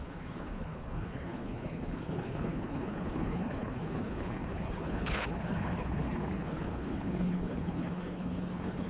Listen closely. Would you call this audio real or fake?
fake